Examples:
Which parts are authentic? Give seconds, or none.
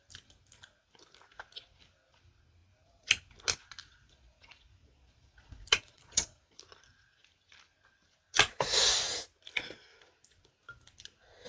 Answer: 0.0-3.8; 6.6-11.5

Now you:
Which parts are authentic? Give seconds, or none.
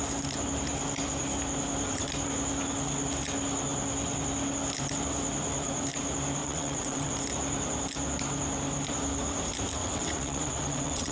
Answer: 0.0-6.4; 7.1-9.8